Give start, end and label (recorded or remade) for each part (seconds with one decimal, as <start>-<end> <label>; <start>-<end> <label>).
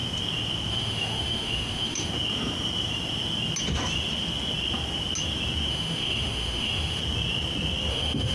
0.0-0.7 recorded; 0.7-2.1 remade; 2.1-5.7 recorded; 5.7-7.0 remade; 7.0-7.9 recorded; 7.9-8.3 remade